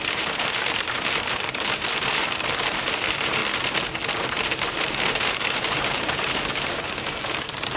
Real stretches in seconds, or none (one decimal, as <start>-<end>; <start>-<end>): 3.4-4.1